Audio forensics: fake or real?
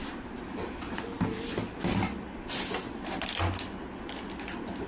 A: real